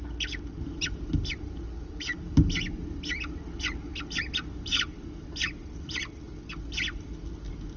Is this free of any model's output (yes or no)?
yes